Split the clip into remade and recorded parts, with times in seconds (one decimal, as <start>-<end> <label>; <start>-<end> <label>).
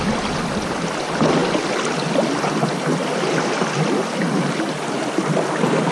0.0-5.9 recorded